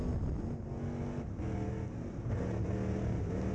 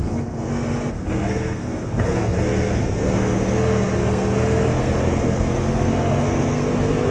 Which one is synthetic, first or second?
second